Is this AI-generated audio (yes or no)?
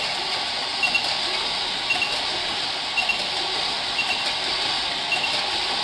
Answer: no